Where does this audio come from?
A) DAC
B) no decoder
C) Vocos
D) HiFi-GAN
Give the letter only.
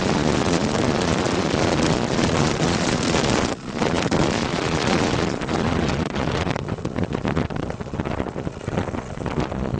C